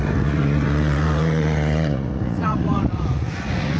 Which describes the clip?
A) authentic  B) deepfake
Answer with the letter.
B